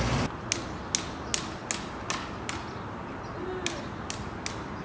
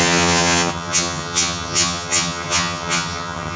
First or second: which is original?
first